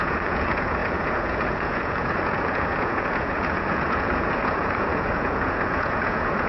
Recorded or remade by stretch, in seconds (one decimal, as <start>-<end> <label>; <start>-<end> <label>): 0.0-6.5 remade